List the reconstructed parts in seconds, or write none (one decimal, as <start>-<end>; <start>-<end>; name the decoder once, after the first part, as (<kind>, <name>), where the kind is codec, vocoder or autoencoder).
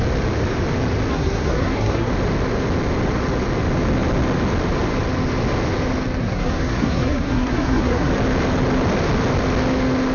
1.1-2.1 (codec, SNAC); 6.2-8.1